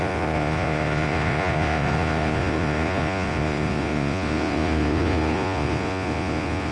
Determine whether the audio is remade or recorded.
remade